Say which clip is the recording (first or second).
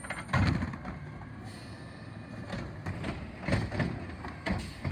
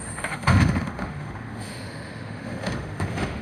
first